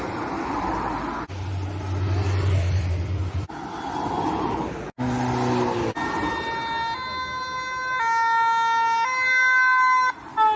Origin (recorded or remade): recorded